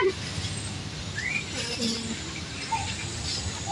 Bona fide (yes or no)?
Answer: yes